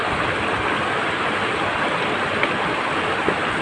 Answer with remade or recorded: recorded